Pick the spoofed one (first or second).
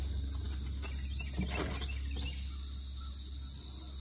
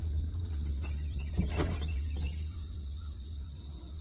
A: second